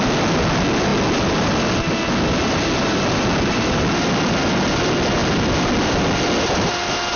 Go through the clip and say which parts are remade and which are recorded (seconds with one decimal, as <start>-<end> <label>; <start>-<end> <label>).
0.0-7.2 recorded